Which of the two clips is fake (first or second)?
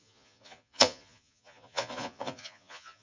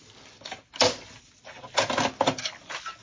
first